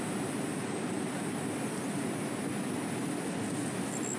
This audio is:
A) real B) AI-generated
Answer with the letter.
A